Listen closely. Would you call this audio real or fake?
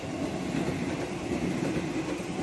real